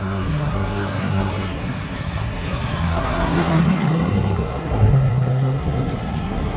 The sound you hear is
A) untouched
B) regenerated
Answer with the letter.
B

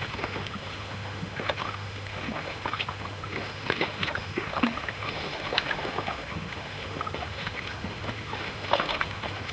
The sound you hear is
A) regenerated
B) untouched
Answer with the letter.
A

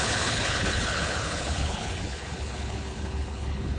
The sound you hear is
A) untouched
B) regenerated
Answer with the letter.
B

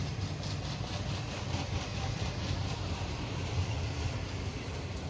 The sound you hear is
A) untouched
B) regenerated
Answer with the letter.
B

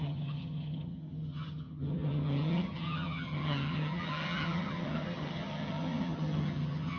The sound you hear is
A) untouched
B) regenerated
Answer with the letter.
B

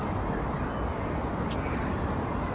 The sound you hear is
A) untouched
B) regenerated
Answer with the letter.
A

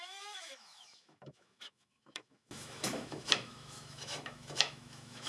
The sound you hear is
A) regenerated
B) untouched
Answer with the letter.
A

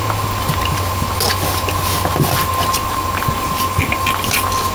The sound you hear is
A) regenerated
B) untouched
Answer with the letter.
B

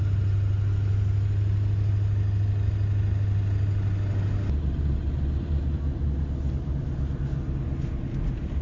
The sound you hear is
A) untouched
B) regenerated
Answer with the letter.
A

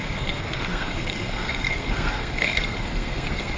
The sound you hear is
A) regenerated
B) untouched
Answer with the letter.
A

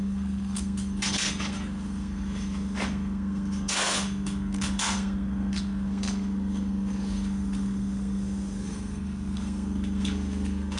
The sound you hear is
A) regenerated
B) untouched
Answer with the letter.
A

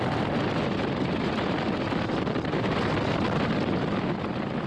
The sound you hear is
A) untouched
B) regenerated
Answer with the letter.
A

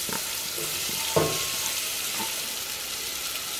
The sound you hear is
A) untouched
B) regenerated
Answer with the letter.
A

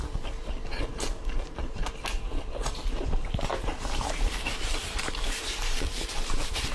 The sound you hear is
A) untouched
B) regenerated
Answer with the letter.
B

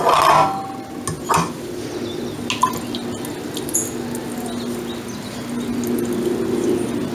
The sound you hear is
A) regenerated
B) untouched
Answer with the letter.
B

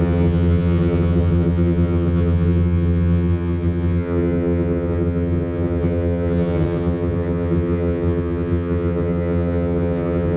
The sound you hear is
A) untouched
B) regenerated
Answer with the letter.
B